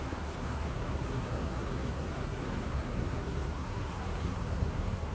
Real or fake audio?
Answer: fake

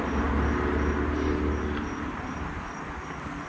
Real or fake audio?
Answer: real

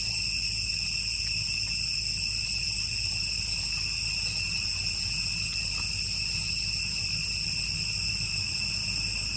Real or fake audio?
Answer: real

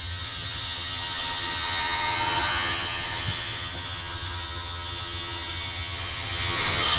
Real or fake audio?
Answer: fake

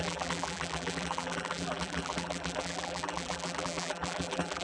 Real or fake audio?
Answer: fake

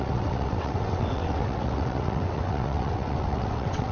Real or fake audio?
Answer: fake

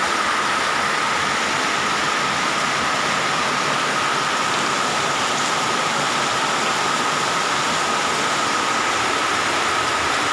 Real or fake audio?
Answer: real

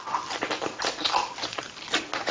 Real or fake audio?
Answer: real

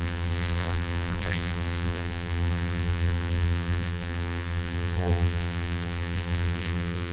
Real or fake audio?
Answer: fake